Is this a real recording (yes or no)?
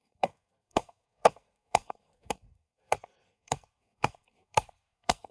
no